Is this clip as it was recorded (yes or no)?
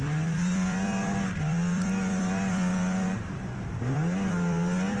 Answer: no